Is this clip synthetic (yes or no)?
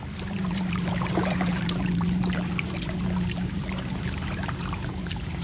yes